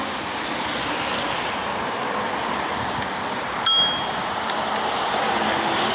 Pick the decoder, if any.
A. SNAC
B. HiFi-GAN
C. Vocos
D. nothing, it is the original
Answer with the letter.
D